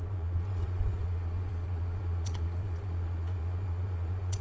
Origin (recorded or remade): remade